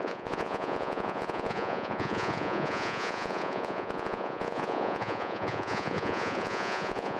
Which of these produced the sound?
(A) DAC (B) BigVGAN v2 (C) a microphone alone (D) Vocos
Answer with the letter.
D